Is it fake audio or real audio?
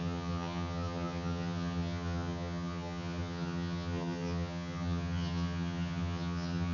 fake